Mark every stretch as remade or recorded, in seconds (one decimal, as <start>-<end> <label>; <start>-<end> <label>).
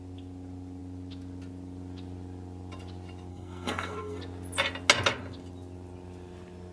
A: 0.0-3.3 recorded; 3.3-4.2 remade; 4.2-6.7 recorded